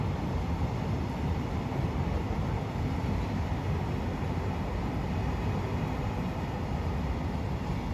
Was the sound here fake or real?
real